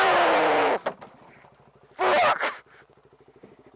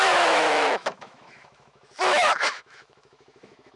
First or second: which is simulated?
second